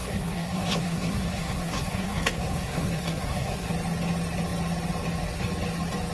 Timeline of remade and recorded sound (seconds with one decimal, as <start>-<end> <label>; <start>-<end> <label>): 0.0-3.7 remade; 3.7-6.1 recorded